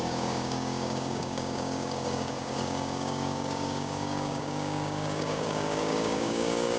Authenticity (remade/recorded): remade